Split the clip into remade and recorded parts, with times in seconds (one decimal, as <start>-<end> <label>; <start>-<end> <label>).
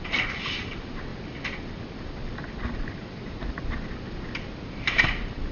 0.0-1.1 remade; 1.1-2.6 recorded; 2.6-3.4 remade; 3.4-4.5 recorded; 4.5-5.5 remade